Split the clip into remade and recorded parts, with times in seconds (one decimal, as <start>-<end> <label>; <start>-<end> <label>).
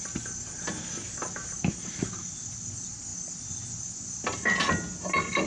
0.0-5.5 recorded